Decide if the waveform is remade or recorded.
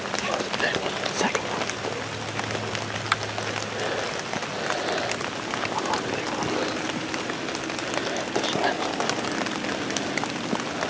recorded